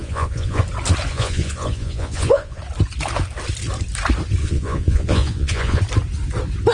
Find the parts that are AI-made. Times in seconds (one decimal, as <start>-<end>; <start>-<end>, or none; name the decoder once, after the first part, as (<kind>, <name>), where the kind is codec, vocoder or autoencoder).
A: 0.0-0.6 (vocoder, Vocos); 1.1-2.6; 4.4-5.8